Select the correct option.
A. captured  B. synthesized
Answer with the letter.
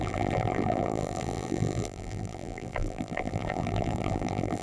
B